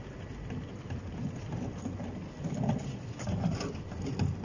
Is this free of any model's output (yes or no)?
yes